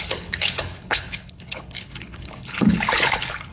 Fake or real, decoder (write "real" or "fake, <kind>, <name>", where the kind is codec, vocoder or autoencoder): fake, codec, HILCodec